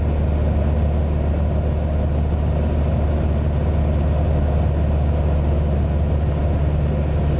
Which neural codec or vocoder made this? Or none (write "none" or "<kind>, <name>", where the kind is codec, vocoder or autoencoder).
none